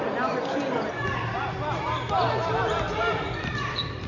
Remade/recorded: recorded